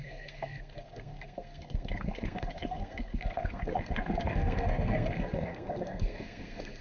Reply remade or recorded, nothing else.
remade